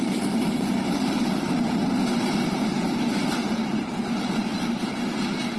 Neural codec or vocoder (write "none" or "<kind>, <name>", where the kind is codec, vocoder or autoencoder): vocoder, BigVGAN v2